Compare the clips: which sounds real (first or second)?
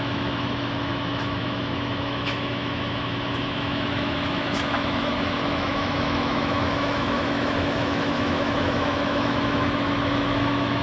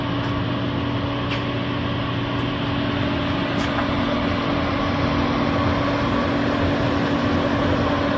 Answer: second